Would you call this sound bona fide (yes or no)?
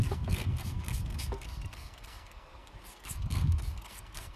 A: no